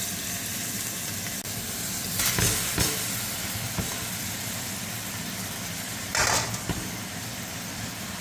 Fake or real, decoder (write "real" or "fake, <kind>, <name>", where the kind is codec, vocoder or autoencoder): fake, vocoder, BigVGAN v2